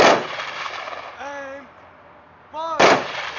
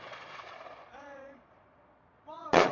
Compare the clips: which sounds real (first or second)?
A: first